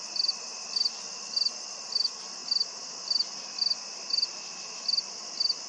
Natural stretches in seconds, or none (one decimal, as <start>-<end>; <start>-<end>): 0.0-5.7